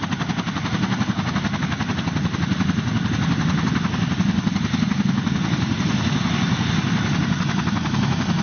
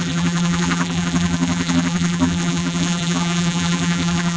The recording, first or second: first